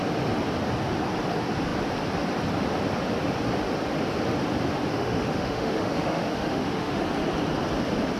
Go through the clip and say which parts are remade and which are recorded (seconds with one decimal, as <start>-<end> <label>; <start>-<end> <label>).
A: 0.0-4.9 recorded; 4.9-7.0 remade; 7.0-8.2 recorded